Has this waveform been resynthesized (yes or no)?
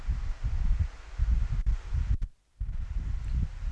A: no